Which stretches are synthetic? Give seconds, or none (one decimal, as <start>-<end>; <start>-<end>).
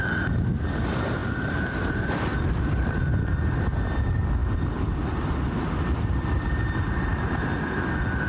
none